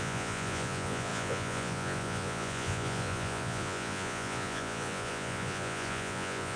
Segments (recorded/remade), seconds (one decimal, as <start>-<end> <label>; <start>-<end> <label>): 0.0-6.6 remade